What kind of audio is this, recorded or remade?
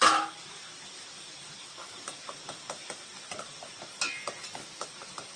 recorded